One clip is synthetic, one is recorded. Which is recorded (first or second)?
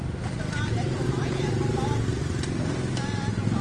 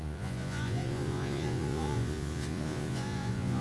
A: first